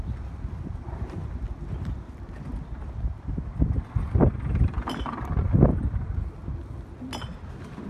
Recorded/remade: recorded